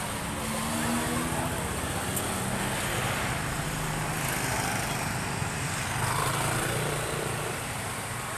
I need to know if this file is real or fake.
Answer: real